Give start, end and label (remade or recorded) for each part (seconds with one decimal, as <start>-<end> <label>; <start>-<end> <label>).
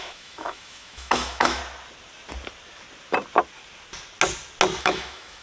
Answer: 0.0-1.6 remade; 1.6-4.8 recorded; 4.8-5.4 remade